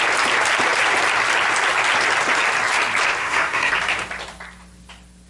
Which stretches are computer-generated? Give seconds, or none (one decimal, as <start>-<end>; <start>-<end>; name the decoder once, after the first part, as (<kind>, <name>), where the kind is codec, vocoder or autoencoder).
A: 3.2-3.7 (codec, SNAC)